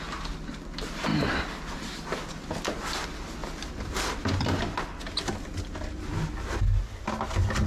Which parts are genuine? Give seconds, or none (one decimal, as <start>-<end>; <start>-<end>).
0.0-3.4; 4.6-7.7